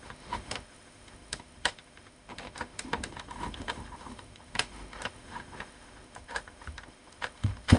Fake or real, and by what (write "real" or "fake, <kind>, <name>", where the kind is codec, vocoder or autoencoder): fake, autoencoder, DAC-VAE